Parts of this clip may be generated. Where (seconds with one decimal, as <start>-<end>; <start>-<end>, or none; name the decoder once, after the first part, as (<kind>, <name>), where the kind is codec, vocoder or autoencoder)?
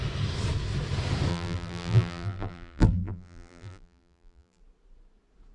1.3-4.6 (vocoder, BigVGAN v2)